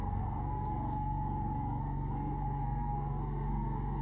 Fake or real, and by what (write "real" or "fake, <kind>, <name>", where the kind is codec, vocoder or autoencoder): fake, codec, SNAC